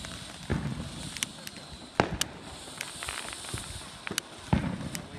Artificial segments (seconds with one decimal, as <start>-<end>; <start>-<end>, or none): none